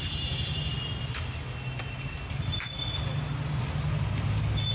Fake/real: real